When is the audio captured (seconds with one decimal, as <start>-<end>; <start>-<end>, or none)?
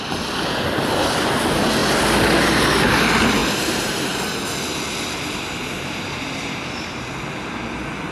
0.0-3.4; 4.2-5.6; 7.0-8.1